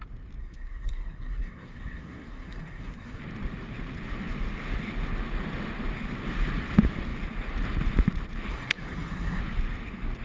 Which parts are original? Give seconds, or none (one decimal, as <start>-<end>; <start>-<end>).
0.0-0.4; 3.2-8.5; 9.4-10.2